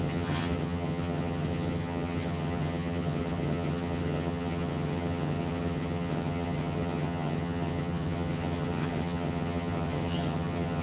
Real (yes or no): no